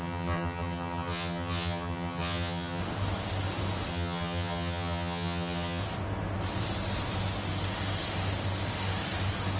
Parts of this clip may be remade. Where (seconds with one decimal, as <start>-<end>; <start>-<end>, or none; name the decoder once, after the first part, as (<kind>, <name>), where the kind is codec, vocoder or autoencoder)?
0.0-2.8 (vocoder, HiFi-GAN); 3.9-5.8